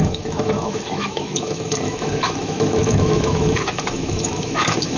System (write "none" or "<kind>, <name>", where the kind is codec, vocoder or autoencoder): autoencoder, DAC-VAE